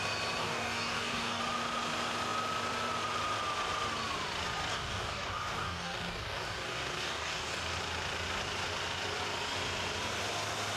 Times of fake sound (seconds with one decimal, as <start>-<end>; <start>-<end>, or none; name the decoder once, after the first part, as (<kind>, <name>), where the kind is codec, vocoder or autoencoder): 0.4-1.4 (codec, DAC); 4.7-7.6